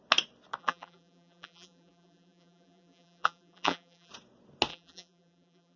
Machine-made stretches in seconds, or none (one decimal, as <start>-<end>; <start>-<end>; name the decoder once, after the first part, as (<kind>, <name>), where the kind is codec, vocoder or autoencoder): 0.6-4.1 (vocoder, BigVGAN v2); 4.7-5.8